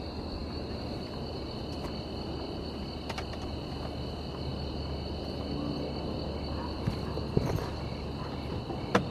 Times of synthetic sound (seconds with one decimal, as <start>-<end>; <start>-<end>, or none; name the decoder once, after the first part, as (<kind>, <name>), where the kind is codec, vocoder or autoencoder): none